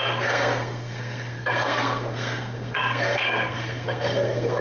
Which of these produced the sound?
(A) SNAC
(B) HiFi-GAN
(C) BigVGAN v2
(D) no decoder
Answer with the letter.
A